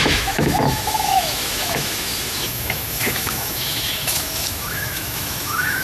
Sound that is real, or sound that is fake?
fake